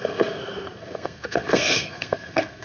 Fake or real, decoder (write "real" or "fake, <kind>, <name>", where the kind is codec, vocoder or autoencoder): fake, codec, SNAC